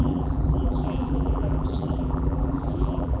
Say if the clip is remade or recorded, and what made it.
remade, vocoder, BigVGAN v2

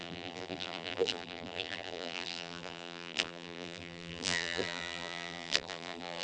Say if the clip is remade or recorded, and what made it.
remade, vocoder, BigVGAN v2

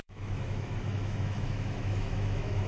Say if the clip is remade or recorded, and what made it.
remade, autoencoder, DAC-VAE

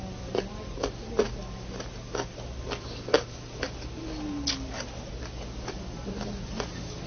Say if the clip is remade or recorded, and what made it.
recorded